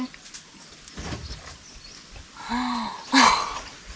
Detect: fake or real real